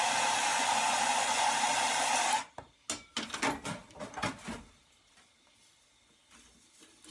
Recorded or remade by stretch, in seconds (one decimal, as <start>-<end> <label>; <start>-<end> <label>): 0.0-0.5 recorded; 0.5-1.5 remade; 1.5-7.1 recorded